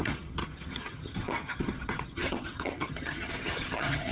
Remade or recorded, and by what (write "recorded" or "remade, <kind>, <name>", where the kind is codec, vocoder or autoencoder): remade, vocoder, HiFi-GAN